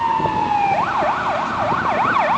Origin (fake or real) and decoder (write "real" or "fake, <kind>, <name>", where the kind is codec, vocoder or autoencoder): real